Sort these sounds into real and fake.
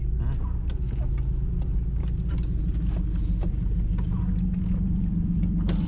real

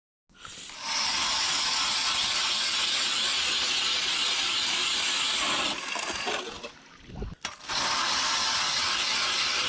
real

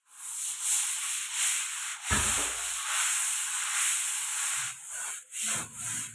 real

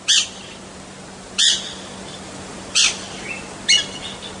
real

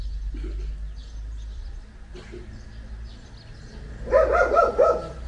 real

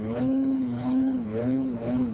fake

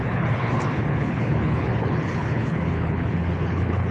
fake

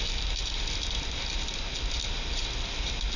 real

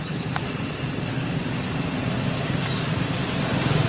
real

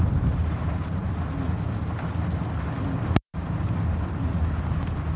real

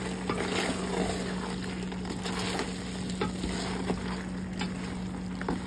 real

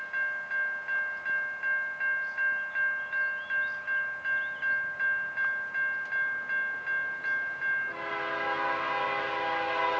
real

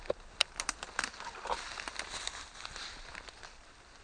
real